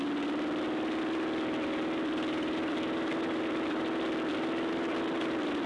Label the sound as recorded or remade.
recorded